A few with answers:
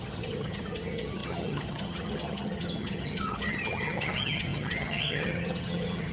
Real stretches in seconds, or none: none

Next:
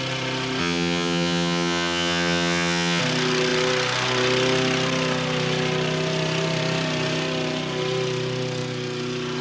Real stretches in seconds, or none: 0.0-0.6; 3.0-9.4

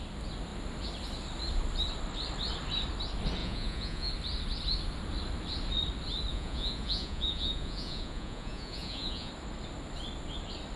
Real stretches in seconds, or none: 0.0-3.4; 4.1-6.3; 9.3-10.8

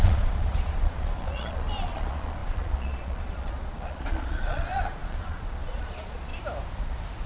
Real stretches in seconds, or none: 6.3-7.3

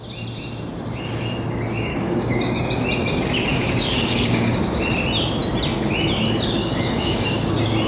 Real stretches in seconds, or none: 0.0-1.9; 2.7-3.5; 4.6-6.6; 7.5-7.9

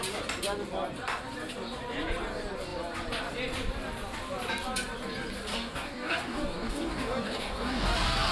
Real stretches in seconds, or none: 0.0-5.5

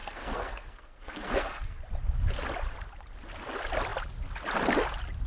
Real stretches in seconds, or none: 1.8-5.3